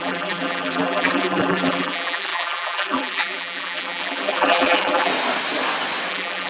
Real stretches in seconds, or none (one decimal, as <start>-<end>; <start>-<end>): 5.1-6.1